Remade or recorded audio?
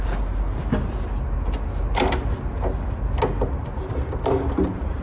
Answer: recorded